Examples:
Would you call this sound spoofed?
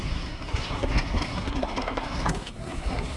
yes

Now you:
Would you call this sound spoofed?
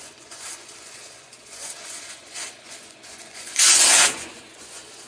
yes